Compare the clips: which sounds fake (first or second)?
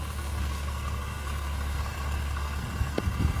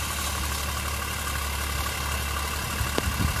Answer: first